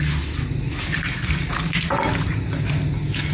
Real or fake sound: real